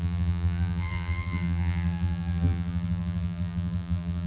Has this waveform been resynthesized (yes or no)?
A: yes